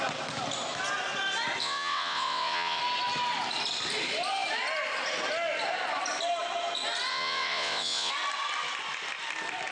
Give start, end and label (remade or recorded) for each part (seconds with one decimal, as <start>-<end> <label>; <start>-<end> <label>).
0.0-1.6 recorded; 1.6-2.8 remade; 2.8-7.1 recorded; 7.1-8.1 remade; 8.1-9.7 recorded